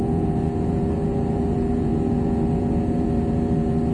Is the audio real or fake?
fake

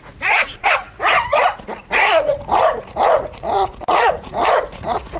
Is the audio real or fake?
fake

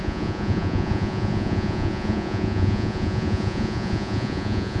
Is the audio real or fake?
fake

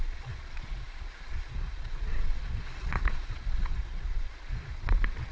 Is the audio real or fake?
fake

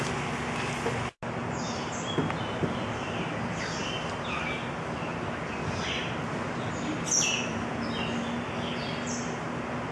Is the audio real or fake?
real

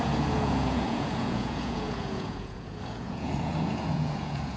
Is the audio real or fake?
fake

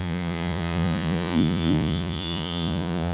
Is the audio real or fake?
fake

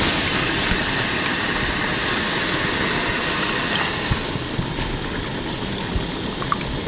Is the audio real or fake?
real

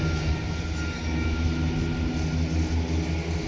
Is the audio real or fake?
real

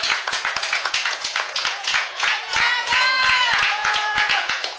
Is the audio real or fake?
fake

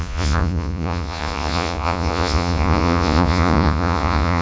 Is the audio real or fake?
fake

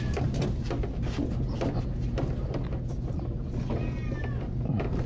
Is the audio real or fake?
real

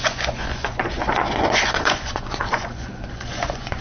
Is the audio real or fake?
fake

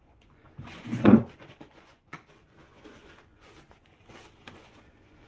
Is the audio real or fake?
fake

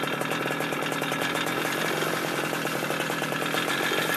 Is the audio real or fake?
real